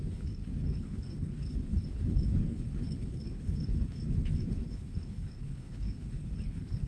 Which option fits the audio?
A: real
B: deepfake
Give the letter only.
B